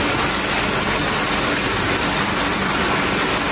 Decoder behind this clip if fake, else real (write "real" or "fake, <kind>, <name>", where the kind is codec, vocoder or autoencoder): real